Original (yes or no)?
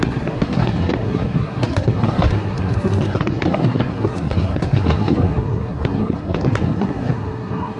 no